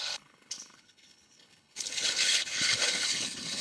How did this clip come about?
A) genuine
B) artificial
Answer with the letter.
B